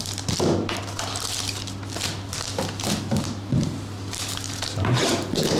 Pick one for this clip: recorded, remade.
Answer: remade